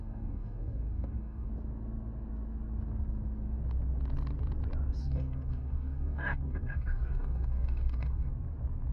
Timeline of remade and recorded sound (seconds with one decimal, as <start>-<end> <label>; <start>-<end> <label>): 0.0-1.5 remade; 1.5-5.0 recorded; 5.0-8.3 remade; 8.3-8.9 recorded